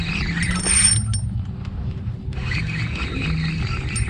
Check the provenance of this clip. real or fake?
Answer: real